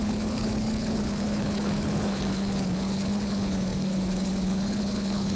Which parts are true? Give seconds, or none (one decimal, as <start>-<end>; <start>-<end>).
none